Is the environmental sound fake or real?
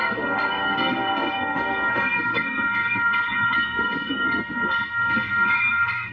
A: fake